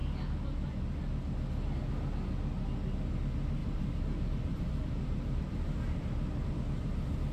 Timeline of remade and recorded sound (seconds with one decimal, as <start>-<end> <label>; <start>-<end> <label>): 0.0-3.6 recorded; 3.6-6.6 remade; 6.6-7.3 recorded